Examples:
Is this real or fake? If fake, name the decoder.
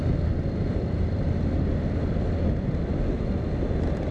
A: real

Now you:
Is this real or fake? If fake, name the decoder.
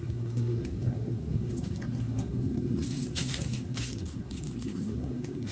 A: fake, codec, SNAC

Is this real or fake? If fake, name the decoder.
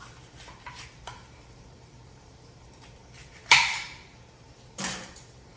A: fake, vocoder, BigVGAN v2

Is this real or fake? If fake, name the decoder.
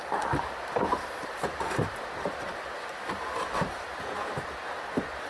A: real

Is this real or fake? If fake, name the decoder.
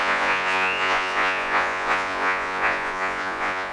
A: fake, vocoder, Vocos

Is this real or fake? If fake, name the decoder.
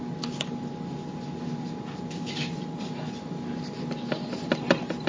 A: real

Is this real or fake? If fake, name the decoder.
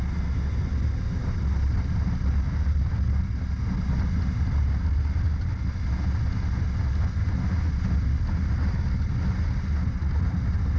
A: real